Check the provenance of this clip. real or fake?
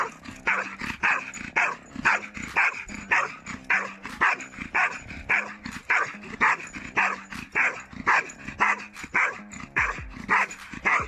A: real